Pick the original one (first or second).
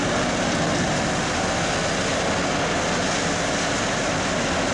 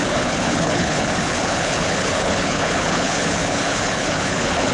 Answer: first